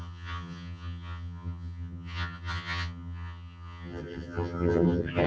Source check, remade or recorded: remade